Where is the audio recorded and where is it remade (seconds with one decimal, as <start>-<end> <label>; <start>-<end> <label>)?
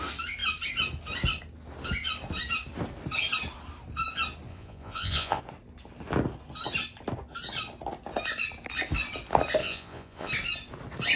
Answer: 0.0-4.5 recorded; 4.5-5.4 remade; 5.4-9.6 recorded; 9.6-10.3 remade; 10.3-11.2 recorded